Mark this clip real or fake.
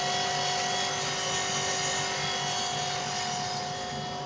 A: real